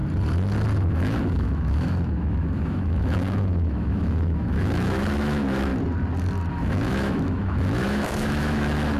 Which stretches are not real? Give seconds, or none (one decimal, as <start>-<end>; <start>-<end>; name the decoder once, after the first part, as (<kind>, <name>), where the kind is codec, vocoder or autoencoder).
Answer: 0.9-5.7 (autoencoder, DAC-VAE); 6.5-9.0